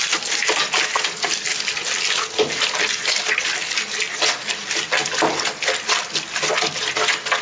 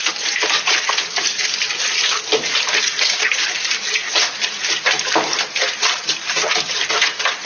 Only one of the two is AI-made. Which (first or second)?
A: second